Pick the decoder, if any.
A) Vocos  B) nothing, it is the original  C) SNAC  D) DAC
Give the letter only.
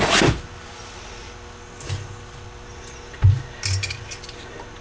B